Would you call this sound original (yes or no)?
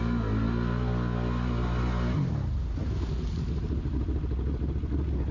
yes